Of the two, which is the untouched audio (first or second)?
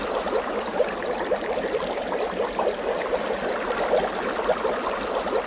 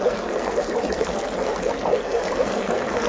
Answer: first